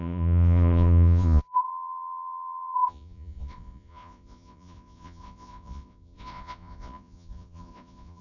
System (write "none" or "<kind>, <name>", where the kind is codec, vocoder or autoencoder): vocoder, Vocos